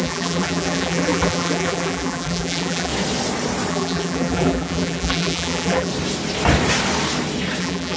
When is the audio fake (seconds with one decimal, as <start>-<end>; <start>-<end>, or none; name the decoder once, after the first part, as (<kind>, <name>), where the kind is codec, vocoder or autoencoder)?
0.0-2.9 (vocoder, BigVGAN v2); 3.7-5.9; 7.6-8.0